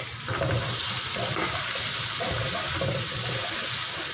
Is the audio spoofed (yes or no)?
yes